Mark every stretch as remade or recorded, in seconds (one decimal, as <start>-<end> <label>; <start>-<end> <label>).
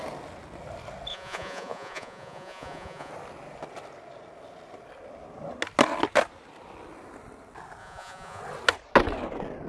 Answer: 0.0-1.1 recorded; 1.1-3.1 remade; 3.1-7.8 recorded; 7.8-8.4 remade; 8.4-9.7 recorded